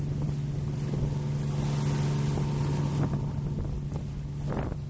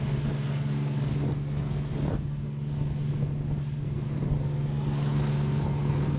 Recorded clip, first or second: first